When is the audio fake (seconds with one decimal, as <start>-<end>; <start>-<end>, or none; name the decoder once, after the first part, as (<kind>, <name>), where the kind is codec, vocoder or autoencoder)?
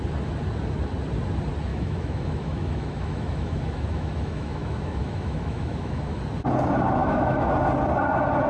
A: 1.7-6.2 (autoencoder, DAC-VAE); 7.0-7.5